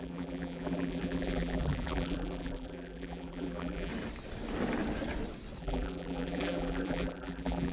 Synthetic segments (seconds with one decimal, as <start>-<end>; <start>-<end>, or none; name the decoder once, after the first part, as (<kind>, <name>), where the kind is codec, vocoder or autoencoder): 0.0-3.9 (vocoder, BigVGAN v2); 5.6-7.7